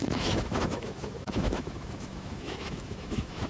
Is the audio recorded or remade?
remade